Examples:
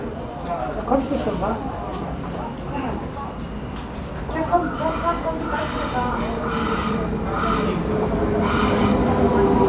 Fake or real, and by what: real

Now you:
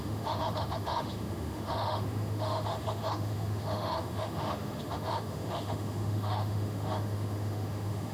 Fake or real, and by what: fake, autoencoder, DAC-VAE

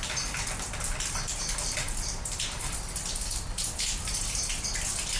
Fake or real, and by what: fake, vocoder, BigVGAN v2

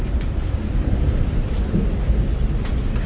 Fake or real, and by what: real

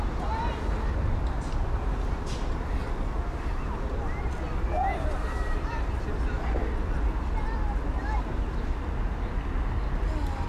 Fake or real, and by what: real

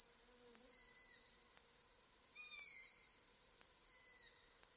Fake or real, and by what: real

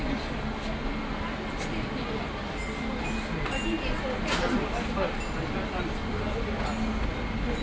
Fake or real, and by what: real